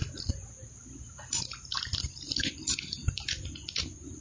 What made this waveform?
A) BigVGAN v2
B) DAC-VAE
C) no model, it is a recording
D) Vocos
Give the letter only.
C